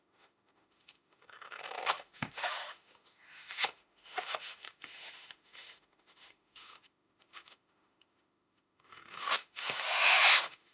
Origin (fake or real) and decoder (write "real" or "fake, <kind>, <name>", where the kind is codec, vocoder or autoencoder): fake, autoencoder, DAC-VAE